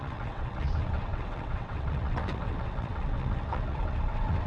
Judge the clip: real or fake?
fake